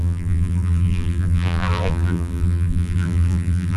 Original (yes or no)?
no